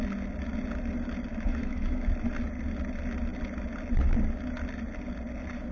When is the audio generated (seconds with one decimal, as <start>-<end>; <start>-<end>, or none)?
1.3-2.1